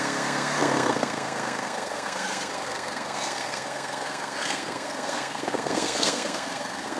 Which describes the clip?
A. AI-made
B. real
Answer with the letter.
A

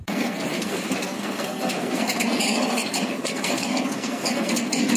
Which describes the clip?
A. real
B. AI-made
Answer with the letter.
B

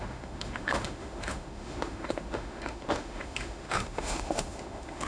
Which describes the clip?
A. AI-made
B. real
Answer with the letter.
A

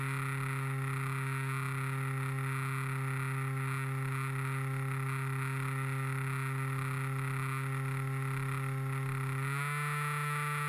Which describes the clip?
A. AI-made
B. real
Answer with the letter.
B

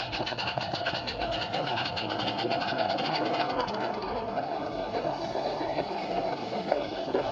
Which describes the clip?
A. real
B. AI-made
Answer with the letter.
B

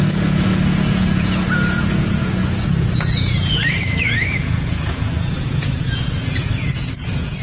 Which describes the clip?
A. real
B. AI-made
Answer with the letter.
B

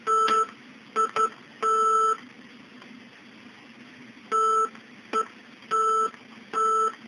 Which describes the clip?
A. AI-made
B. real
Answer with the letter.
B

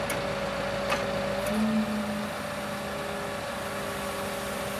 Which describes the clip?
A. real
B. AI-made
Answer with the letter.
A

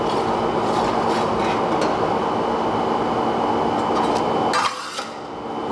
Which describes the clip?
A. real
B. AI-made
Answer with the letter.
A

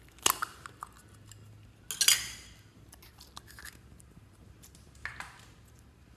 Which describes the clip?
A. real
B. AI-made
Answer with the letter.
A